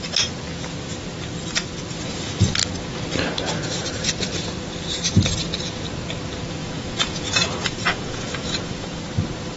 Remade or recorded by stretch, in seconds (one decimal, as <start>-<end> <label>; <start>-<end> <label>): 0.0-6.6 recorded; 6.6-9.0 remade; 9.0-9.6 recorded